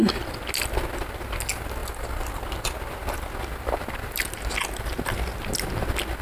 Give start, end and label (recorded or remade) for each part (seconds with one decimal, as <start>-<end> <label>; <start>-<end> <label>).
0.0-6.2 recorded